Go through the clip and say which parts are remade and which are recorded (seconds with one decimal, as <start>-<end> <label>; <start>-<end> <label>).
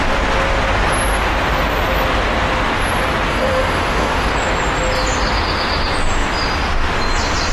0.0-3.3 recorded; 3.3-4.3 remade; 4.3-7.5 recorded